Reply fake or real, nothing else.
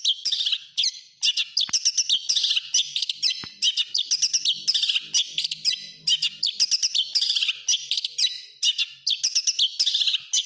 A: real